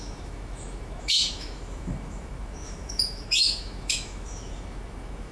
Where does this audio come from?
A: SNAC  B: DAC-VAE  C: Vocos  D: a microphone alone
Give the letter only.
B